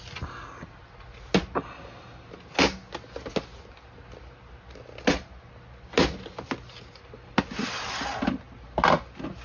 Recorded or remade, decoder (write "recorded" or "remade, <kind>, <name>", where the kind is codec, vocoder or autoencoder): recorded